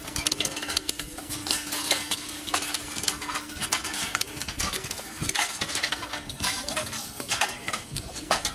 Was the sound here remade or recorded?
remade